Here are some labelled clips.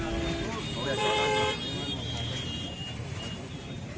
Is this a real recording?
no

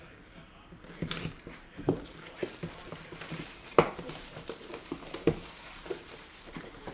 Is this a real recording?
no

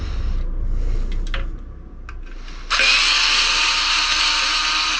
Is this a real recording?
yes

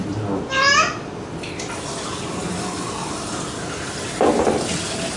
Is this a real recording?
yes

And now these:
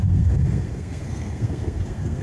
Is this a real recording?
no